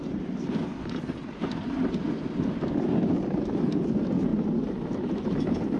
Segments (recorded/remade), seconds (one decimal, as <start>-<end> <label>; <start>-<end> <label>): 0.0-0.6 remade; 0.6-2.7 recorded; 2.7-5.8 remade